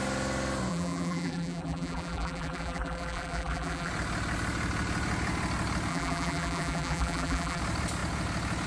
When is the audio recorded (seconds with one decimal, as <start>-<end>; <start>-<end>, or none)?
0.0-0.7; 3.9-5.9; 7.6-8.7